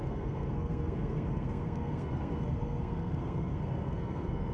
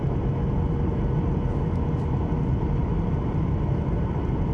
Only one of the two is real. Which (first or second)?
second